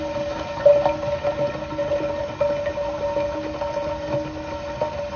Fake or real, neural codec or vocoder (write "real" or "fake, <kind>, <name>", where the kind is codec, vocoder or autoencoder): real